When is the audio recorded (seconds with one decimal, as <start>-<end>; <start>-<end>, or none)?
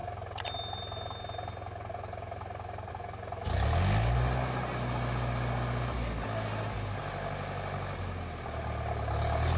0.0-9.6